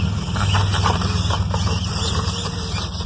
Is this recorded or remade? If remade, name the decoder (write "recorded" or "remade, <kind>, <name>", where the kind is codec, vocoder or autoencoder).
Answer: recorded